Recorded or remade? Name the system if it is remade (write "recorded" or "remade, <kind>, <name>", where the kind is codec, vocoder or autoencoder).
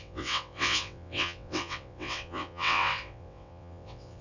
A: remade, vocoder, WaveNeXt